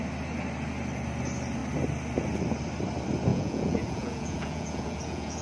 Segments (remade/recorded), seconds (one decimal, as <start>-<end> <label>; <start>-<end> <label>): 0.0-3.3 recorded; 3.3-5.4 remade